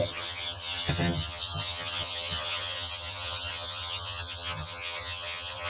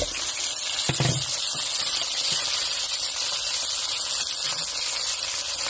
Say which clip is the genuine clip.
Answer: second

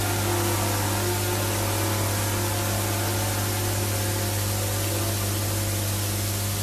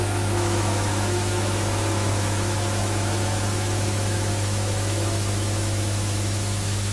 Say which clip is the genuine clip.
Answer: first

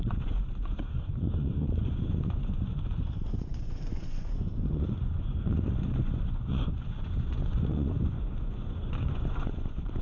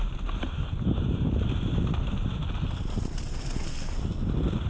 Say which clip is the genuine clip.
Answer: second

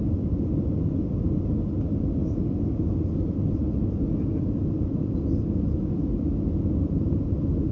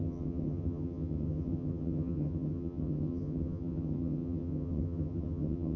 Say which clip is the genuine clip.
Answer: first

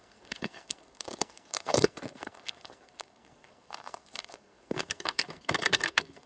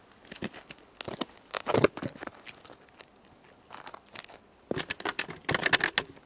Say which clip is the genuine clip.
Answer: second